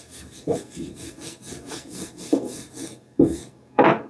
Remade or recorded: remade